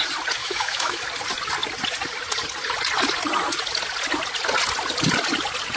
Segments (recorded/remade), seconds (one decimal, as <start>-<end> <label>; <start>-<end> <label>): 0.0-0.4 recorded; 0.4-1.0 remade; 1.0-5.8 recorded